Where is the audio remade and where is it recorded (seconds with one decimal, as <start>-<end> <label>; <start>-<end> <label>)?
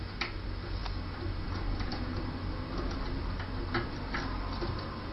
0.0-5.1 recorded